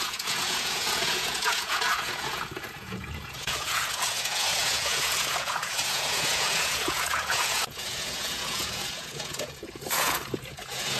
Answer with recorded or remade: remade